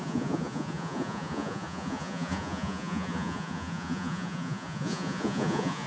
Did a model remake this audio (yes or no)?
yes